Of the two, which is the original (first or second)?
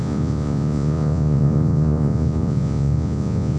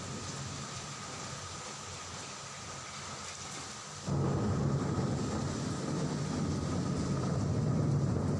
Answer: second